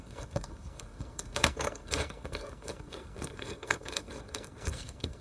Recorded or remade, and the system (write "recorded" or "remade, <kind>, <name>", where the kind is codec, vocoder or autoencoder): remade, codec, SNAC